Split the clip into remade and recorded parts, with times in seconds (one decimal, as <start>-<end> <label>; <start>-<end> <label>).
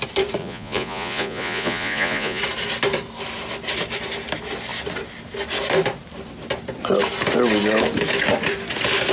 0.0-0.4 recorded; 0.4-2.4 remade; 2.4-9.1 recorded